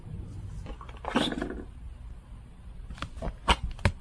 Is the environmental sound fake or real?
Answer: real